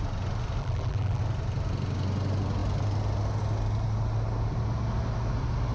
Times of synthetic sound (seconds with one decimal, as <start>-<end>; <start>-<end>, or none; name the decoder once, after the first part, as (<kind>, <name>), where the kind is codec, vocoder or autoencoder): 0.6-1.2 (vocoder, BigVGAN v2)